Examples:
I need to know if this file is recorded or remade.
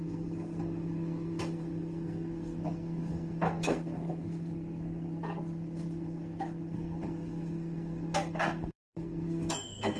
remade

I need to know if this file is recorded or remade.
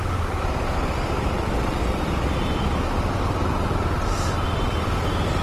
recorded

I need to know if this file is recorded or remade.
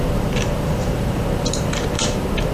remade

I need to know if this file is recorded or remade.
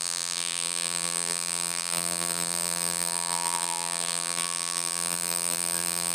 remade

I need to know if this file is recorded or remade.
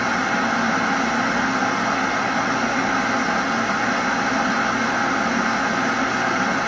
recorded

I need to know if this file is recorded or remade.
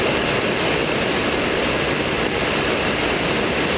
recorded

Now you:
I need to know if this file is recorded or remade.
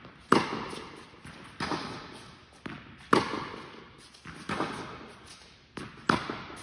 recorded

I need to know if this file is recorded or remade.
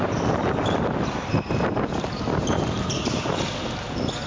recorded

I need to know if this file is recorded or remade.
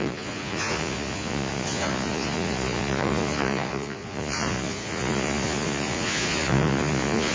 remade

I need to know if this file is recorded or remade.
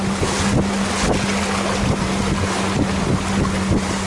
recorded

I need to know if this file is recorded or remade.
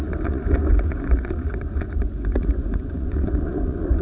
remade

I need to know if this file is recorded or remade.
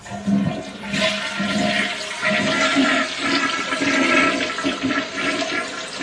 recorded